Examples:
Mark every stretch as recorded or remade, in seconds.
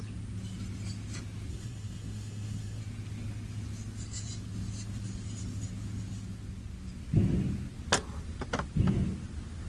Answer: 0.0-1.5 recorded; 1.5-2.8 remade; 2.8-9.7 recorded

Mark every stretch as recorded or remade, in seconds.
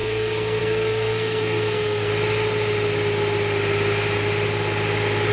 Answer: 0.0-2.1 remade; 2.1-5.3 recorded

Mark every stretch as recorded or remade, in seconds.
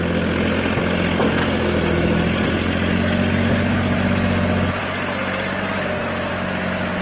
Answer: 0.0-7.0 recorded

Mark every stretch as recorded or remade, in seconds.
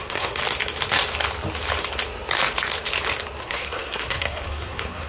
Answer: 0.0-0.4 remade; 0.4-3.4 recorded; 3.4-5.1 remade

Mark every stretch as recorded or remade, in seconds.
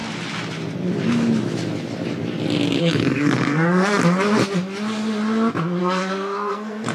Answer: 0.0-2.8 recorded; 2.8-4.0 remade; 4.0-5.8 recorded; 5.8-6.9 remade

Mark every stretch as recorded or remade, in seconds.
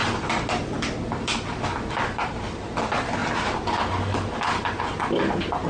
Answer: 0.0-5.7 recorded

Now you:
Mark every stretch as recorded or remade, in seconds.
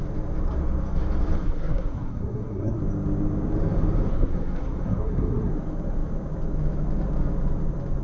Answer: 0.0-1.4 recorded; 1.4-2.8 remade; 2.8-4.1 recorded; 4.1-5.5 remade; 5.5-8.0 recorded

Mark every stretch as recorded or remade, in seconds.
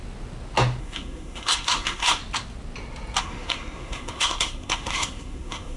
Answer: 0.0-0.8 recorded; 0.8-2.2 remade; 2.2-3.2 recorded; 3.2-5.8 remade